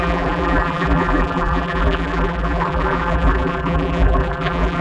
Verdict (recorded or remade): remade